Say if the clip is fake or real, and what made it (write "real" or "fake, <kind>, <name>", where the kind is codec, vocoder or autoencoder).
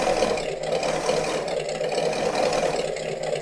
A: real